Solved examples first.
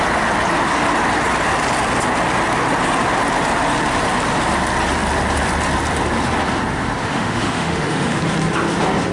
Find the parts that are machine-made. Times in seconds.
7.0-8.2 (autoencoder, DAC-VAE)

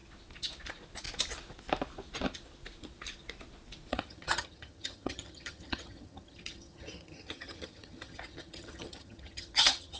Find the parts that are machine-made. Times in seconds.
3.9-10.0 (vocoder, HiFi-GAN)

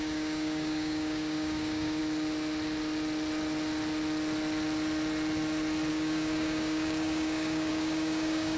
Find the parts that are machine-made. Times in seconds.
0.0-2.0 (codec, DAC); 5.9-8.6